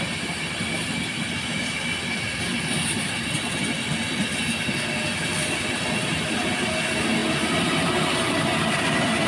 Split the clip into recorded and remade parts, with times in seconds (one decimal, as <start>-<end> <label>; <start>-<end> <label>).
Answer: 0.0-9.3 recorded